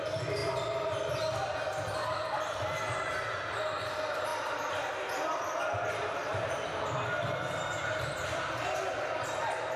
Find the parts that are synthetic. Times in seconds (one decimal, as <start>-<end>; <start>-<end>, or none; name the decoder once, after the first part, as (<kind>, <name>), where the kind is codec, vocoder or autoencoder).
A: 4.3-6.8 (vocoder, BigVGAN v2)